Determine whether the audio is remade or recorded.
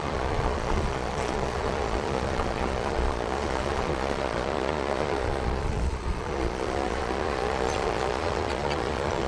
remade